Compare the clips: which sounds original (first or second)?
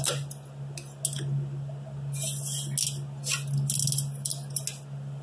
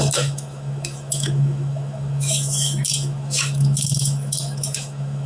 first